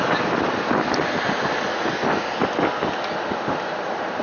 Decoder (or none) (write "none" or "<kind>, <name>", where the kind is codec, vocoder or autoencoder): none